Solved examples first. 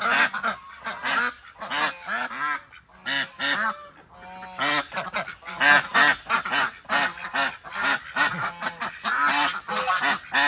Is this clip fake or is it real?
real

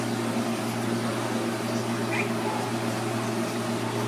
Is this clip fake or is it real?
real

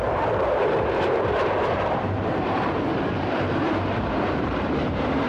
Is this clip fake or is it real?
fake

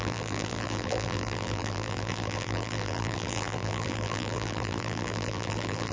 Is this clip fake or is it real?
fake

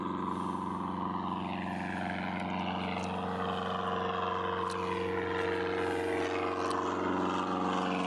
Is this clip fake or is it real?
real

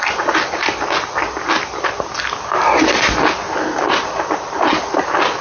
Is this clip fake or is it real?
real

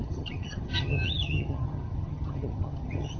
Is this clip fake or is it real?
fake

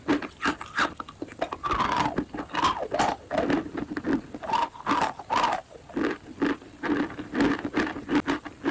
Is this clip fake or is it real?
real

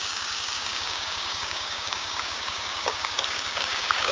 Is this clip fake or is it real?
fake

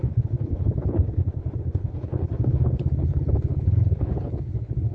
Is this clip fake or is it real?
fake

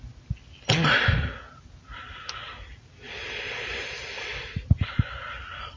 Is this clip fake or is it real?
real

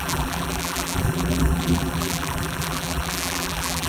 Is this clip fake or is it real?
fake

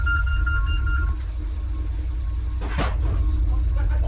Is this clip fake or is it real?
real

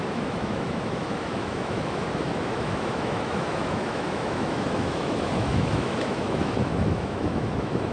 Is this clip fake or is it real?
fake